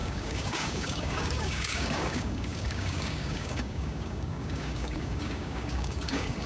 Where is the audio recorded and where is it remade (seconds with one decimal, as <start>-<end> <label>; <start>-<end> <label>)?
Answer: 0.0-6.5 remade